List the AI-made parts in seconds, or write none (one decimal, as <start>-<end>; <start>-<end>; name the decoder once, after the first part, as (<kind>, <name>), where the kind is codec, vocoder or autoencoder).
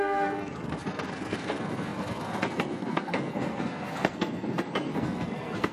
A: 0.0-5.7 (codec, SNAC)